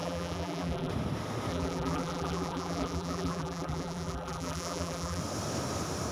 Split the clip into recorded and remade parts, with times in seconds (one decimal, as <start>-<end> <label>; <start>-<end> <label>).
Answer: 0.0-0.9 remade; 0.9-1.5 recorded; 1.5-5.2 remade; 5.2-6.1 recorded